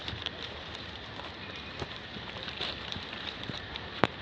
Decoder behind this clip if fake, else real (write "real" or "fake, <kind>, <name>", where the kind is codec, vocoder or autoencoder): fake, vocoder, BigVGAN v2